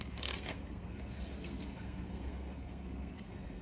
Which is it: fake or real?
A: fake